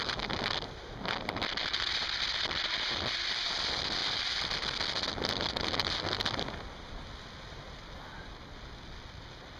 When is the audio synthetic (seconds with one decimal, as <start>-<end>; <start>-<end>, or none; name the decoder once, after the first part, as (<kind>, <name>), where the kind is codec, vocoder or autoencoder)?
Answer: none